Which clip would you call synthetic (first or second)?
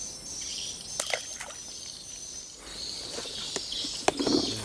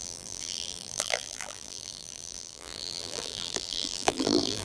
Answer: second